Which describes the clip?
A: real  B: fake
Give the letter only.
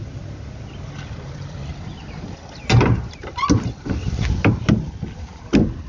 A